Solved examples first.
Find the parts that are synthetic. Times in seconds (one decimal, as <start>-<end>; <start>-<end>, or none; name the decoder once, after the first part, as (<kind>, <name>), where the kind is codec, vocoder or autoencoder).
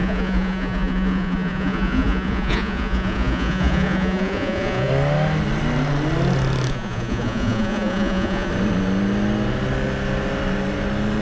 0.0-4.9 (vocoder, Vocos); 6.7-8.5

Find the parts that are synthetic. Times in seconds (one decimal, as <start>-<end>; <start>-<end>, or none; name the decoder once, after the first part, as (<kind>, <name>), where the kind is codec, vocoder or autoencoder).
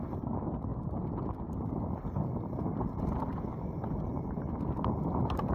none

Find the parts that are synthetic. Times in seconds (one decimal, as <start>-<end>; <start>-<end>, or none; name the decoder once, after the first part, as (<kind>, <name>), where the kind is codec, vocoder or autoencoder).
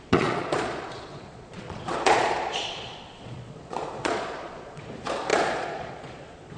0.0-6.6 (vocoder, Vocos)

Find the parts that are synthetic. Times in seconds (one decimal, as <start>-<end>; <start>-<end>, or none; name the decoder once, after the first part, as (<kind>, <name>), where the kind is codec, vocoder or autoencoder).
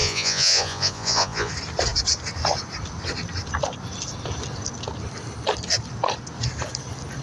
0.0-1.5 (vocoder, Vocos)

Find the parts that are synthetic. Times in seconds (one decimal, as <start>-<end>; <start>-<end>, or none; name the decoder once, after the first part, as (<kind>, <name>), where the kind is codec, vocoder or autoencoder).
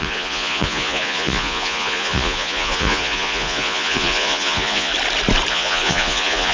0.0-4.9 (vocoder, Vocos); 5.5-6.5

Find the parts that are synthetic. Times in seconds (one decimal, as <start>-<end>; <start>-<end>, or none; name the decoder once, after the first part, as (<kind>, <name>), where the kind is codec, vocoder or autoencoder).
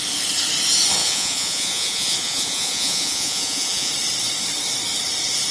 1.0-3.9 (vocoder, Vocos)